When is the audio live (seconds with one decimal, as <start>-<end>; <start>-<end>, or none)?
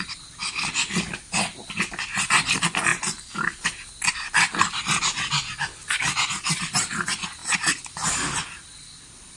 0.0-6.0; 6.9-9.4